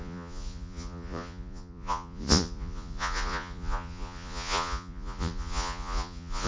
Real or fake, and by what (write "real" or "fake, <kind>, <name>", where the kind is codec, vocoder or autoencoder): fake, vocoder, Vocos